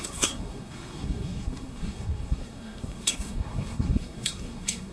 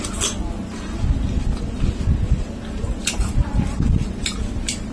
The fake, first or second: first